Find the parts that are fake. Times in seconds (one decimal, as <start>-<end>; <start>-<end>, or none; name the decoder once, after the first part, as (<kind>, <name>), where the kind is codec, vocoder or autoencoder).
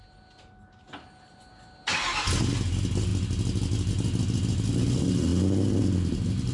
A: none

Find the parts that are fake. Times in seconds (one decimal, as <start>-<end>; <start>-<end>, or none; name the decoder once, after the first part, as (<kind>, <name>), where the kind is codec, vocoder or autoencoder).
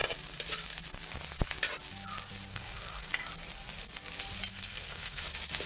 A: 2.5-3.1 (codec, SNAC); 4.5-5.2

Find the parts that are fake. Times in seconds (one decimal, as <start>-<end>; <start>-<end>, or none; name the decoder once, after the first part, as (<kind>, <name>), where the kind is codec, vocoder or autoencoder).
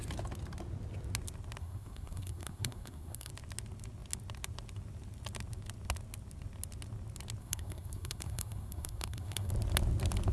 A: 1.6-3.3 (codec, SNAC); 7.4-9.5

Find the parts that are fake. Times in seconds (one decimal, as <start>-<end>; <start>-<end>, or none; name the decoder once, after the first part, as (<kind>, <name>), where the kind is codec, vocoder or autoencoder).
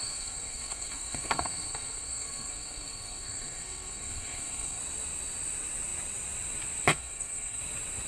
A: 0.0-4.8 (codec, SNAC); 6.9-7.6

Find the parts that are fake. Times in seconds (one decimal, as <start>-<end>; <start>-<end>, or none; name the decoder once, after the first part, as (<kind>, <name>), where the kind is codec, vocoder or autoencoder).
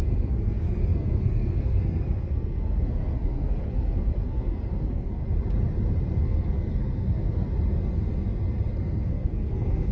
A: 0.0-5.2 (codec, SNAC); 6.2-7.5; 8.7-9.9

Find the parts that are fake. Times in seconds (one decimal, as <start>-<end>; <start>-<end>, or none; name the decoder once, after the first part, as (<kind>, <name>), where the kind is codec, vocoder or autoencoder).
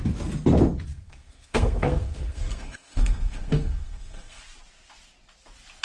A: 0.9-4.4 (codec, SNAC)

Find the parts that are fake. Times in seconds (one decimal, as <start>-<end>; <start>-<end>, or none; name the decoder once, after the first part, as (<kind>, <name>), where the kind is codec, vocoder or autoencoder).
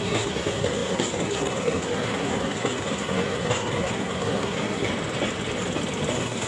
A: 0.0-4.9 (codec, SNAC); 6.1-6.5